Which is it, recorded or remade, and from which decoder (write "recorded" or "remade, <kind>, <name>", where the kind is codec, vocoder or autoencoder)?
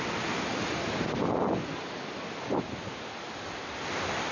recorded